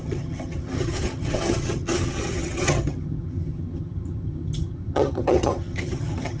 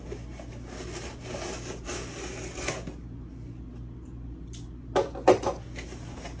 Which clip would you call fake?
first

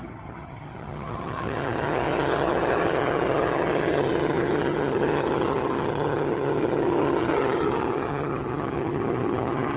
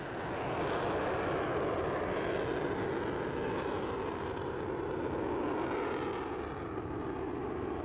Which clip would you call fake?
first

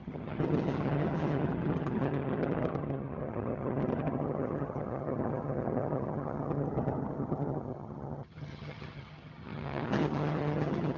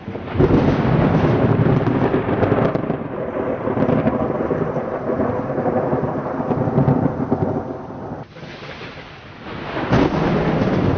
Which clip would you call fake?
first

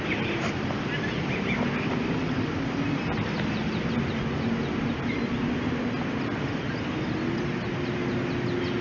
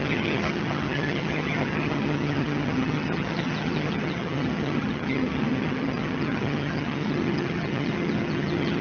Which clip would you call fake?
second